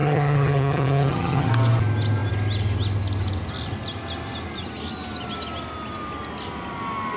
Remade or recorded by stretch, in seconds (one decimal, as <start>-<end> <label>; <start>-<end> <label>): 0.0-1.5 remade; 1.5-7.2 recorded